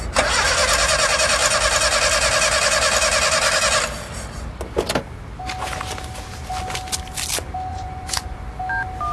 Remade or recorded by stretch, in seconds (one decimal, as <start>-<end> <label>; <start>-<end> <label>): 0.0-7.7 recorded; 7.7-8.4 remade; 8.4-9.1 recorded